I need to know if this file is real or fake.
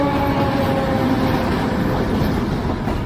real